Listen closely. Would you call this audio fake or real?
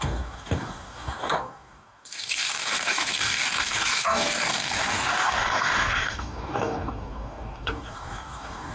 fake